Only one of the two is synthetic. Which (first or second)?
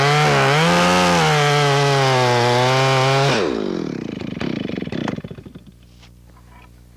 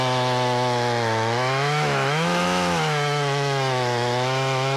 second